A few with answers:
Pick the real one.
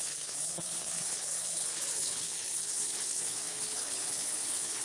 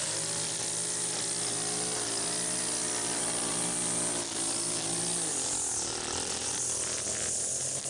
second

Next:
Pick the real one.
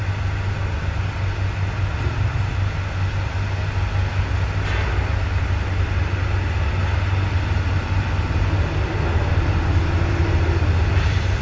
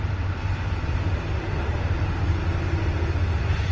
first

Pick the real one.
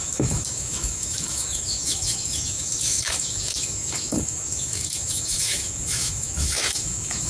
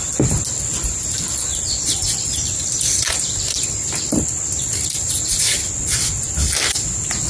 second